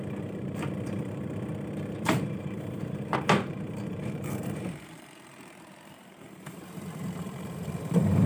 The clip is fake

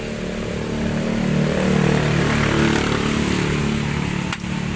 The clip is real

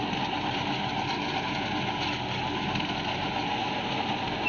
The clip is real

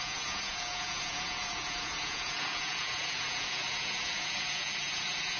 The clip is fake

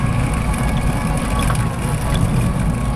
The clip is real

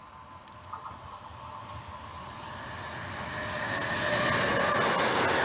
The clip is real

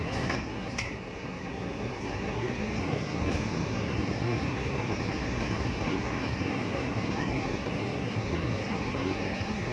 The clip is fake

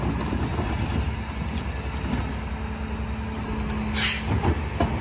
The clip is real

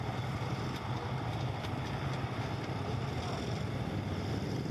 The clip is real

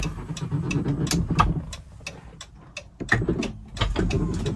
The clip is real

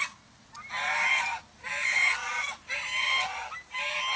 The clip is real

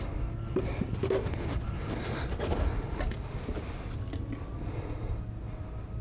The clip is real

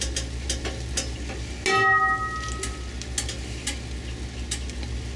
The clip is real